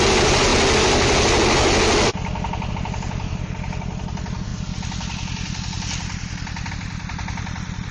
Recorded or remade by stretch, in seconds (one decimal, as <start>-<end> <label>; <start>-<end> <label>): 0.0-7.9 recorded

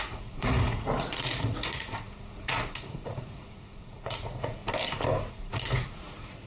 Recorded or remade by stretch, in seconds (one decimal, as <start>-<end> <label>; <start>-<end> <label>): 0.0-4.6 remade; 4.6-5.3 recorded; 5.3-6.5 remade

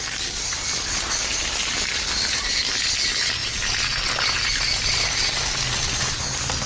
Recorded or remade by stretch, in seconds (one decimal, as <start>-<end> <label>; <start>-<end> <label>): 0.0-6.7 recorded